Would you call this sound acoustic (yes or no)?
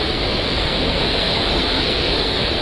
no